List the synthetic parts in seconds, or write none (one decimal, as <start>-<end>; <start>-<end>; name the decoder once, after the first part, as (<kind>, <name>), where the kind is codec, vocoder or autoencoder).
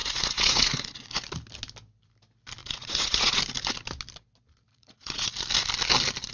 0.0-1.3 (vocoder, Vocos); 2.6-3.4; 4.7-5.3